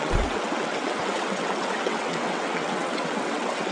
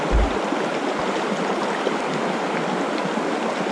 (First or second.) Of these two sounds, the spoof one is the first